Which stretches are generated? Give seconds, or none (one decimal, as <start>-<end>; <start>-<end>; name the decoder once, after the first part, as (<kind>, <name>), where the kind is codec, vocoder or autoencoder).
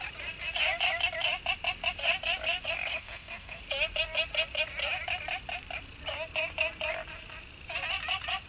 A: 2.9-3.6 (codec, SNAC)